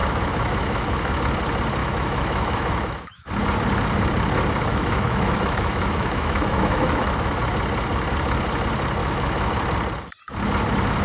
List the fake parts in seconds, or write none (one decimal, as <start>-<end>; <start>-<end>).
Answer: 0.0-1.2; 1.8-3.3; 4.7-7.4; 9.0-9.5

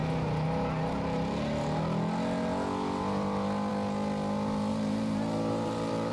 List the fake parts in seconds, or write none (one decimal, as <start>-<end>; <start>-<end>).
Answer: 4.7-6.1

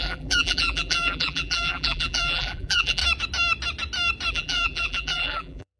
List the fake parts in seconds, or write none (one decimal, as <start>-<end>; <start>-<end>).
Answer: 0.0-3.0; 4.3-5.8

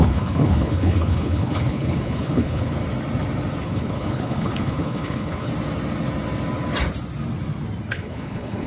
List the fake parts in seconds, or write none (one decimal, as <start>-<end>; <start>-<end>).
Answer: 0.0-2.8; 3.6-5.5; 7.9-8.7